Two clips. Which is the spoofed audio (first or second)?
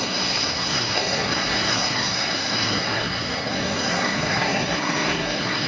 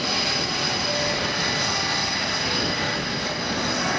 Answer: first